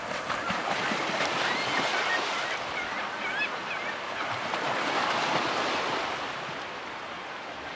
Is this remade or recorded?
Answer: recorded